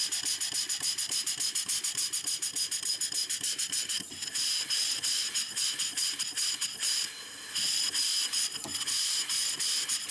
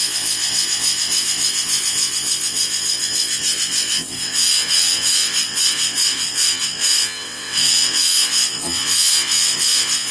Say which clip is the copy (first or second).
second